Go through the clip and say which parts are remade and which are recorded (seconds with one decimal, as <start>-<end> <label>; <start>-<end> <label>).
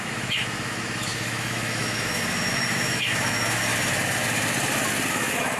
0.0-3.7 remade; 3.7-5.1 recorded; 5.1-5.6 remade